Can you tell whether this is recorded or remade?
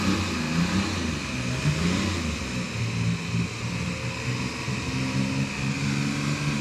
recorded